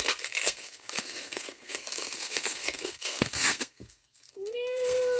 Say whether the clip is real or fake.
fake